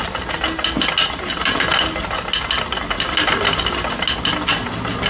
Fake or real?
real